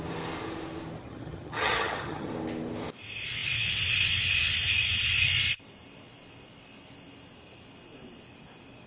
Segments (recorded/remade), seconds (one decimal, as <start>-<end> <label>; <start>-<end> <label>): 0.0-1.0 recorded; 1.0-2.3 remade; 2.3-8.9 recorded